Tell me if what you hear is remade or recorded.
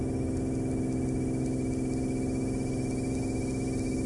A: recorded